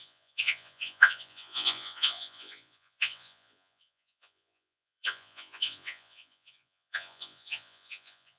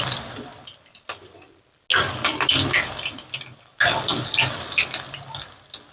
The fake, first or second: first